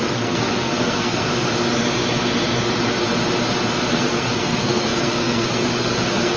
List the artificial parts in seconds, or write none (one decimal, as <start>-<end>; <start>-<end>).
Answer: 0.0-1.3; 3.9-6.4